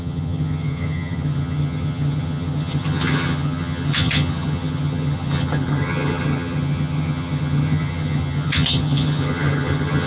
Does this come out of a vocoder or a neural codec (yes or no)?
yes